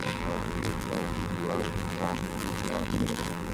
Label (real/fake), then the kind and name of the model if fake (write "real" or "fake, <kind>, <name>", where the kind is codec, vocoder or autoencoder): fake, vocoder, BigVGAN v2